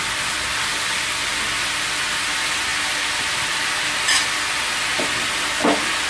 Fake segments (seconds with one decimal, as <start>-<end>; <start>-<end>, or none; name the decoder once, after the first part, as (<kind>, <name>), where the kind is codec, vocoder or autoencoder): none